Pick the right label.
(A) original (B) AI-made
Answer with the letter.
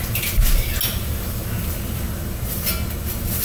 A